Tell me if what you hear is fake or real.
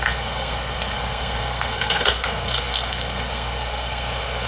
fake